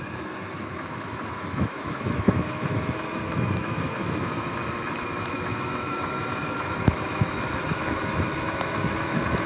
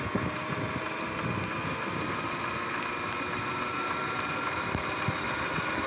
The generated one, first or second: first